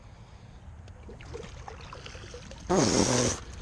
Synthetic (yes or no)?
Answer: no